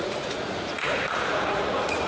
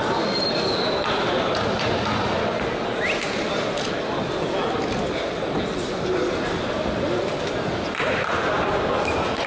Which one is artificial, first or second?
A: first